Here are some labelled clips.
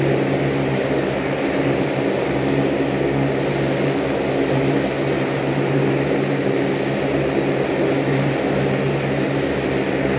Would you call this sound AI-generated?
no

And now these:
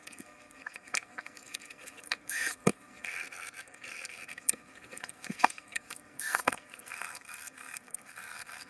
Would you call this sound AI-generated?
yes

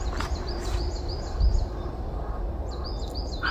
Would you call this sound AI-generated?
no